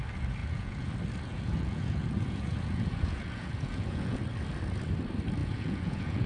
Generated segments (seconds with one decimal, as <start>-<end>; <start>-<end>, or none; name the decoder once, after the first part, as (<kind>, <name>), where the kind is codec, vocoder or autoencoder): 0.4-0.9 (vocoder, Vocos); 1.3-4.2; 5.4-6.3